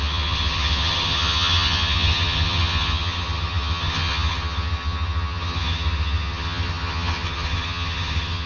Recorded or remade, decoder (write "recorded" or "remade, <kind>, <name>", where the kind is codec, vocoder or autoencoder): remade, vocoder, HiFi-GAN